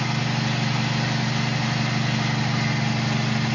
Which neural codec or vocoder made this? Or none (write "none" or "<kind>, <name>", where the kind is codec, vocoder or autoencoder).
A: none